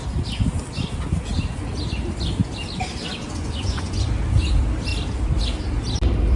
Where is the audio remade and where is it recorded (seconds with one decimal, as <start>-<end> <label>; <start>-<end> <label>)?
0.0-3.4 recorded; 3.4-4.1 remade; 4.1-6.4 recorded

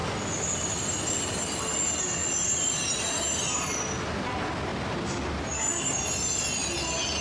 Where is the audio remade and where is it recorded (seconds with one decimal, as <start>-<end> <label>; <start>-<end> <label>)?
0.0-7.2 recorded